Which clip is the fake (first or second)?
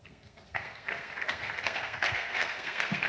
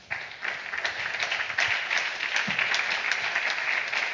first